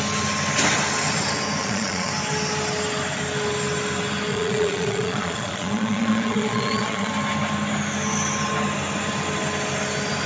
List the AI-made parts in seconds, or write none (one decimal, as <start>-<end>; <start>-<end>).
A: 1.6-2.1; 4.3-7.1